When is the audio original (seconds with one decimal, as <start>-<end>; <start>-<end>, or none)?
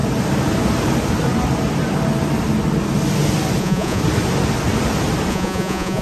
0.0-3.6; 4.0-5.3